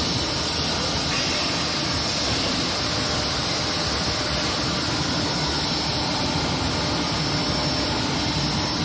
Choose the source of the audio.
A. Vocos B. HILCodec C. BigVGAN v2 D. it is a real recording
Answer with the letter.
D